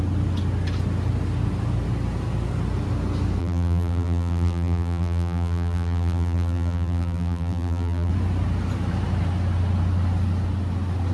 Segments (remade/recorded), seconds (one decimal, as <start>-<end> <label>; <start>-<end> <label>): 0.0-3.4 recorded; 3.4-8.1 remade; 8.1-11.1 recorded